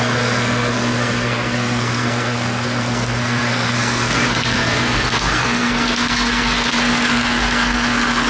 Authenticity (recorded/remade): remade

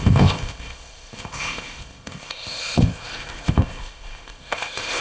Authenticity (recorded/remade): remade